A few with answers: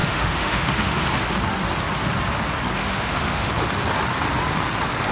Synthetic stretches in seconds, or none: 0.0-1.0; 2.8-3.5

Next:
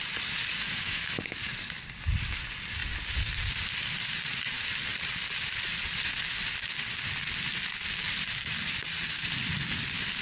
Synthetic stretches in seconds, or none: 0.6-1.4

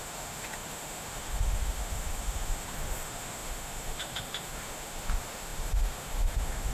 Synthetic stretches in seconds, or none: 0.0-6.7

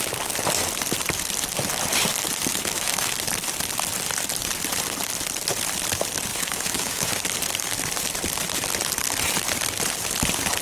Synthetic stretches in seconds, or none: 2.5-3.1; 6.3-7.1

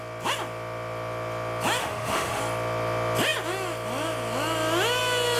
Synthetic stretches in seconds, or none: 1.8-2.4

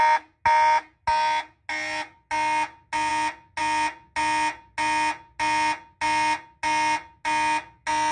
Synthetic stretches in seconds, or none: none

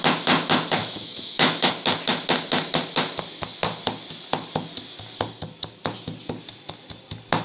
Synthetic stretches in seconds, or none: 0.8-1.7